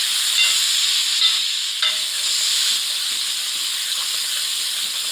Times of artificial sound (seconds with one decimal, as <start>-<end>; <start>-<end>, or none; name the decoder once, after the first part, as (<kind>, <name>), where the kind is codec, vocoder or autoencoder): none